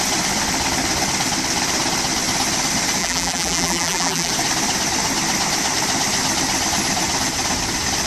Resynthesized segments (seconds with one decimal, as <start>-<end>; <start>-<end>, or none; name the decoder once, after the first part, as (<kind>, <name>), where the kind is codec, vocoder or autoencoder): 3.0-4.3 (vocoder, BigVGAN v2)